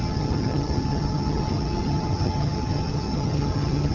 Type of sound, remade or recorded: remade